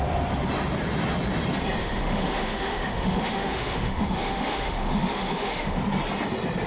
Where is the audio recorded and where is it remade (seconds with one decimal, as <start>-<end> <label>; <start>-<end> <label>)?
0.0-1.8 recorded; 1.8-5.8 remade; 5.8-6.7 recorded